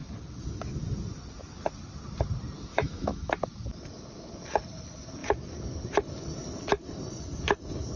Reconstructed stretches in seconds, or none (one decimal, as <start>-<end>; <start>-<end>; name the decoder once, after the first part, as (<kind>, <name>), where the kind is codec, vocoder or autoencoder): 2.7-3.3 (autoencoder, DAC-VAE)